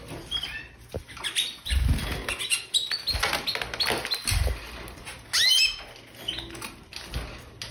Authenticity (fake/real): real